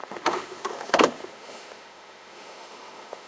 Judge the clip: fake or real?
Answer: fake